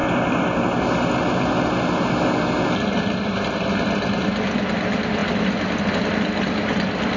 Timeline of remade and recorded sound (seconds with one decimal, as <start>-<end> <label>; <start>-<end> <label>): 0.0-7.2 recorded